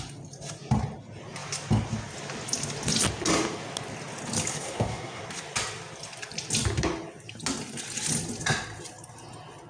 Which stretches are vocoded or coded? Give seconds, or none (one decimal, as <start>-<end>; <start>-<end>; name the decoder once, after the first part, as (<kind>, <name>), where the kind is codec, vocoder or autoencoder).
4.5-5.2 (codec, SNAC)